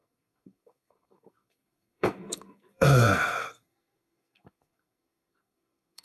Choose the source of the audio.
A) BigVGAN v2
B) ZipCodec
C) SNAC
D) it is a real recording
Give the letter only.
C